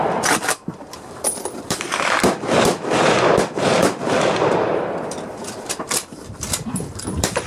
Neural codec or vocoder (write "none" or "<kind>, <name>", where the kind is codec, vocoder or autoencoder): vocoder, BigVGAN v2